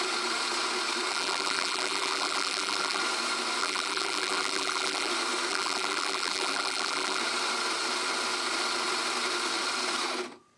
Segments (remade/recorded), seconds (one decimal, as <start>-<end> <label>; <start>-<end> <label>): 0.0-1.1 recorded; 1.1-3.0 remade; 3.0-3.6 recorded; 3.6-5.1 remade; 5.1-5.5 recorded; 5.5-7.2 remade; 7.2-10.6 recorded